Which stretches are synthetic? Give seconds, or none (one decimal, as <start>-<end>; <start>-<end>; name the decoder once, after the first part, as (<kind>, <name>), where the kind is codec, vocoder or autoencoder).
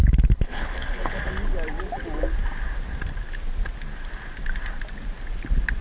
0.0-1.2 (codec, HILCodec)